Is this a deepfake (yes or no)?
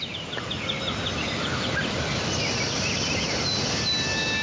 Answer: no